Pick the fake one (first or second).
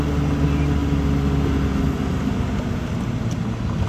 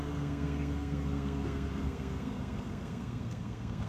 second